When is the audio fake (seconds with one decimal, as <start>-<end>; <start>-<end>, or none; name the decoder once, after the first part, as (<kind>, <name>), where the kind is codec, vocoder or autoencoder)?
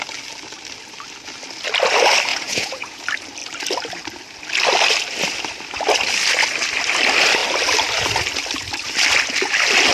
2.3-3.0 (vocoder, Vocos)